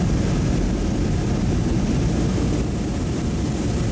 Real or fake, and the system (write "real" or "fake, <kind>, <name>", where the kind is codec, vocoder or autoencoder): real